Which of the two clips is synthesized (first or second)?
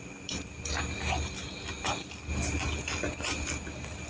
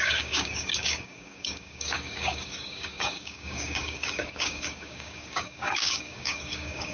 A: second